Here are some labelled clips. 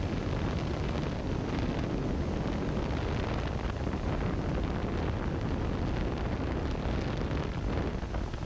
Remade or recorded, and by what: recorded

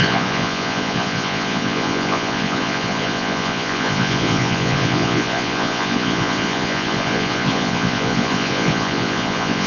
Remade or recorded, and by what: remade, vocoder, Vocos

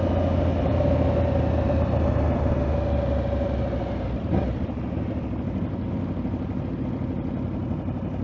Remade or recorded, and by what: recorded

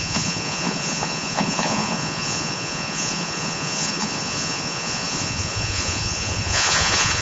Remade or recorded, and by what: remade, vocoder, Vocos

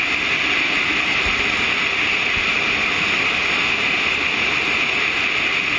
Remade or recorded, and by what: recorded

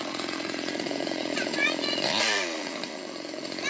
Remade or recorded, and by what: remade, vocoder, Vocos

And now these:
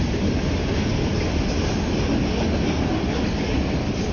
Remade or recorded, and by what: recorded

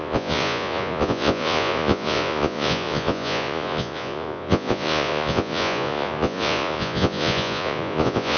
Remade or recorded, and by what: remade, vocoder, Vocos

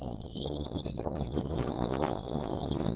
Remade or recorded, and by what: remade, vocoder, Vocos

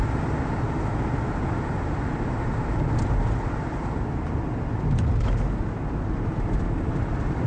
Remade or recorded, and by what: recorded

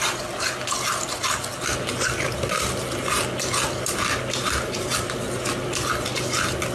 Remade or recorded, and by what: recorded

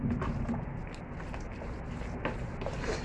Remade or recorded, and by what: recorded